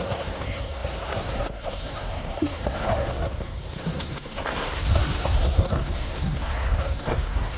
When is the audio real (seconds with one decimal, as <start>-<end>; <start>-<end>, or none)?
none